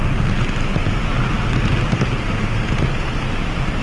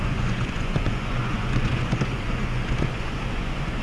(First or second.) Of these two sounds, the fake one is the second